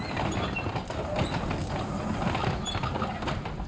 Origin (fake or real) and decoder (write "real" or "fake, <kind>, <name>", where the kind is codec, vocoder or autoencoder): real